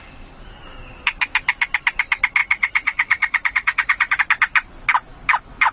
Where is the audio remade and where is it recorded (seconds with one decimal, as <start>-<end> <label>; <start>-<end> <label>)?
0.0-2.4 recorded; 2.4-4.2 remade; 4.2-5.7 recorded